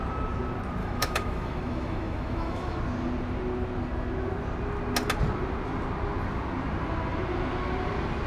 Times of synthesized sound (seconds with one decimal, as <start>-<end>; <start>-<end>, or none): 0.8-2.8